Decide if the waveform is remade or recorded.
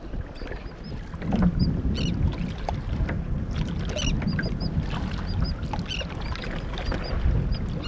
recorded